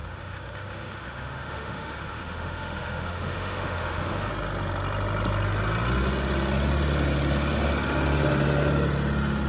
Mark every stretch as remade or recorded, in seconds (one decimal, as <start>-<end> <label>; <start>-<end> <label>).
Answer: 0.0-4.3 remade; 4.3-9.5 recorded